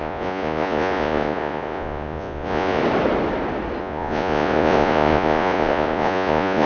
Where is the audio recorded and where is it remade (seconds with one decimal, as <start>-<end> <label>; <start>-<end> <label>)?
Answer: 0.0-2.8 remade; 2.8-3.8 recorded; 3.8-6.7 remade